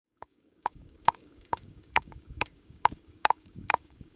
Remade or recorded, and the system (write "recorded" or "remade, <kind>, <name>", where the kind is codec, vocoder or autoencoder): remade, codec, DAC